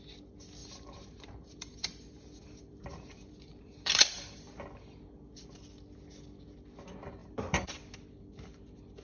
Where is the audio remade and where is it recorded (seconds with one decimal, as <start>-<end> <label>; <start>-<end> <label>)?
0.0-0.6 recorded; 0.6-4.6 remade; 4.6-7.2 recorded; 7.2-7.7 remade; 7.7-9.0 recorded